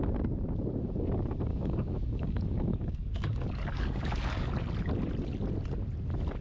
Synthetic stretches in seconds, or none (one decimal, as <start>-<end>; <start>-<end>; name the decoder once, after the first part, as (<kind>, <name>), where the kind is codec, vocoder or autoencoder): 1.5-4.5 (codec, DAC)